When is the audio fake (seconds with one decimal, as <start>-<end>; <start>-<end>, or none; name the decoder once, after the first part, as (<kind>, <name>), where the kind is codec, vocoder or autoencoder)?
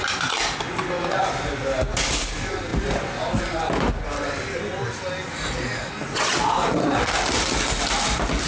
none